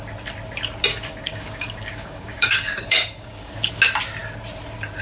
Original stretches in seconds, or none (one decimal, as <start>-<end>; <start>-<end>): 0.0-0.9; 3.7-5.0